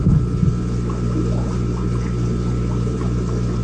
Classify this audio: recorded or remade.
recorded